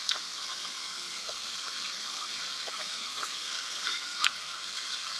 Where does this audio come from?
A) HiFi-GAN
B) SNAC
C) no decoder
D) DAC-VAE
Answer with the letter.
B